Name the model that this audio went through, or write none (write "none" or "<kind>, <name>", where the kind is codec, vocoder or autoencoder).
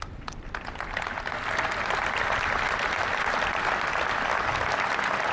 none